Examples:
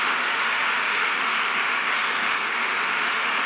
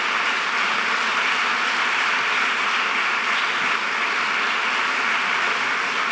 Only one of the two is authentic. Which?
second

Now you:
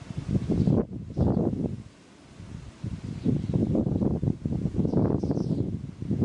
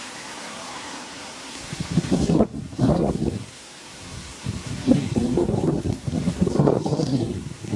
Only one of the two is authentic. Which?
first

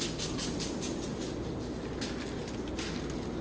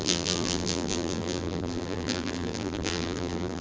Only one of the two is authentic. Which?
first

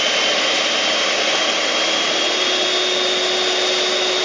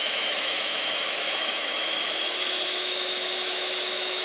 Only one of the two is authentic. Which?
first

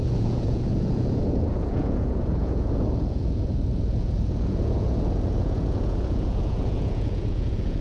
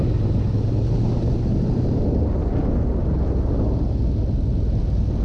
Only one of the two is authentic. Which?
second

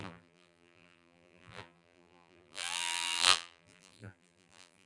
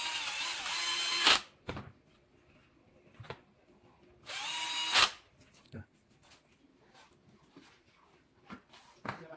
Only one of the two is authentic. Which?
second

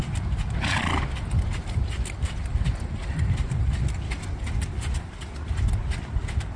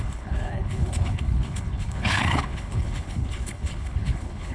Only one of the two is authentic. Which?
first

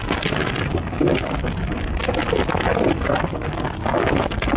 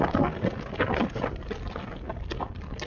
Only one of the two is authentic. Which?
first